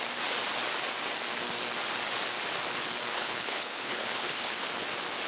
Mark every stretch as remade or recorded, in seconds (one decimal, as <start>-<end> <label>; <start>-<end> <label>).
0.0-3.1 recorded; 3.1-4.7 remade; 4.7-5.3 recorded